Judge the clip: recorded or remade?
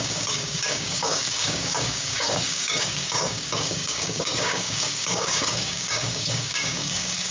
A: remade